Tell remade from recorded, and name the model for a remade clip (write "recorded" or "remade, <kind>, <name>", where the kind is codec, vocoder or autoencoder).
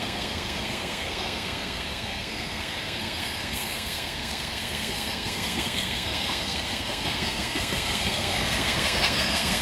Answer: remade, codec, SNAC